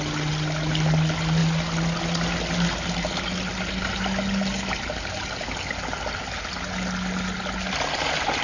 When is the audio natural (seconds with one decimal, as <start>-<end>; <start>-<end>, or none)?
0.0-8.4